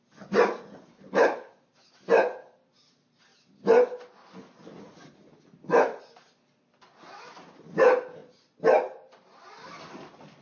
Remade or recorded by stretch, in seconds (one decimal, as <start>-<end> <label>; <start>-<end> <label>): 0.0-0.9 recorded; 0.9-1.5 remade; 1.5-10.4 recorded